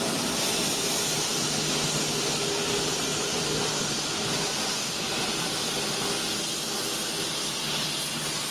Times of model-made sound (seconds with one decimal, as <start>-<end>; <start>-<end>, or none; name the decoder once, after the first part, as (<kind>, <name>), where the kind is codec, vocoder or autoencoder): none